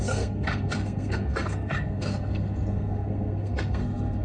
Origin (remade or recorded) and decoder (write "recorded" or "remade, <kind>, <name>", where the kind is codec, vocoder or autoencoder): remade, codec, SNAC